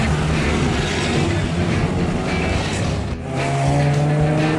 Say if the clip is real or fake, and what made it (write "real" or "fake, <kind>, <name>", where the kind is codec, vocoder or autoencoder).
real